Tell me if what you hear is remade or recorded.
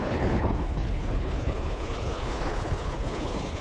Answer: remade